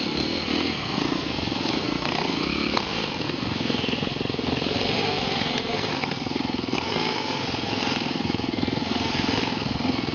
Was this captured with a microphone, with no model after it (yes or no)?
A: no